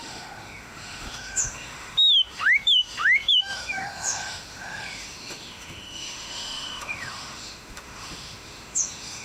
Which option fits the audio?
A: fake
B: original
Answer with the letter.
A